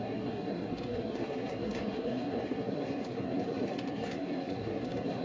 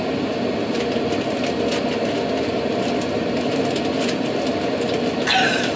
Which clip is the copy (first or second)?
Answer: first